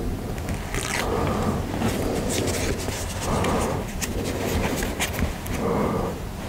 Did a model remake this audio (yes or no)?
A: no